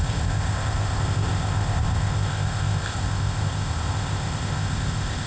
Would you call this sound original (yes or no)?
no